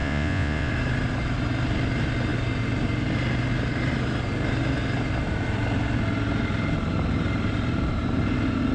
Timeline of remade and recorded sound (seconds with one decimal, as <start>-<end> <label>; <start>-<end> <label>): 0.0-0.7 remade; 0.7-8.7 recorded